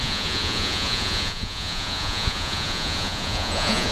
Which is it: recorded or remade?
remade